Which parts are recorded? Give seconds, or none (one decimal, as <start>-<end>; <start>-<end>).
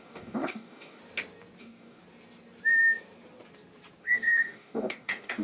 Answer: 1.0-1.6; 2.0-4.0